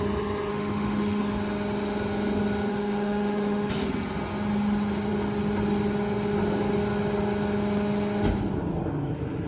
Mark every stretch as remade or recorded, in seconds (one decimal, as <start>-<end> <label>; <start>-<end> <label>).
0.0-0.5 recorded; 0.5-1.2 remade; 1.2-2.7 recorded; 2.7-3.7 remade; 3.7-9.5 recorded